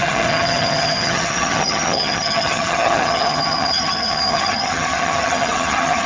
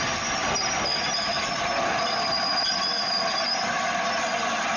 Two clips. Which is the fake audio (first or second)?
first